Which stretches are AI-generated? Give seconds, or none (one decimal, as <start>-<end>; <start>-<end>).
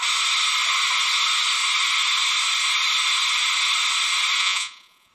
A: 4.4-5.1